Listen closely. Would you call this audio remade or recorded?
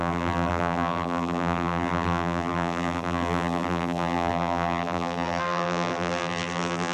remade